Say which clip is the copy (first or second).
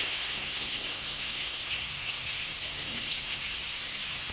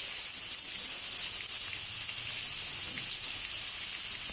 first